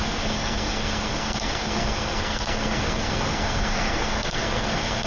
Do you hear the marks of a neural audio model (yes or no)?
yes